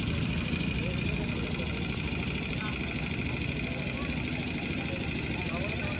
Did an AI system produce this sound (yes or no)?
no